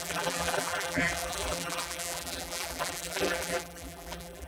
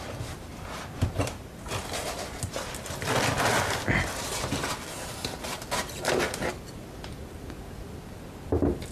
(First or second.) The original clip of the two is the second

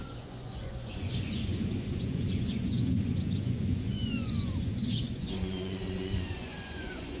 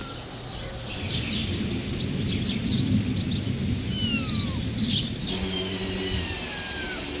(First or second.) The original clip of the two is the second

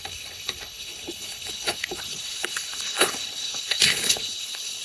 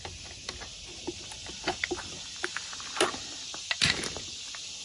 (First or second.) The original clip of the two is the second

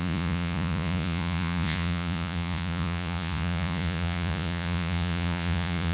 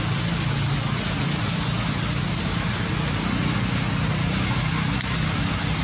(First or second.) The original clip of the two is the second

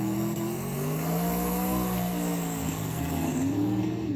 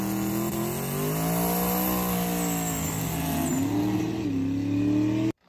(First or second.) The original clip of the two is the second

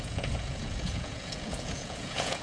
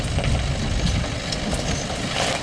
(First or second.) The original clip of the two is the second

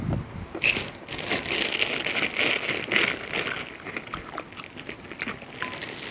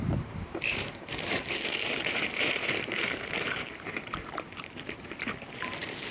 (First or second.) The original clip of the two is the first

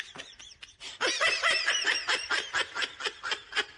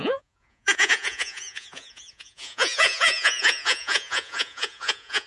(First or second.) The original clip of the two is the first